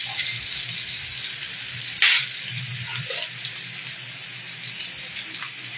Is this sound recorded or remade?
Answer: recorded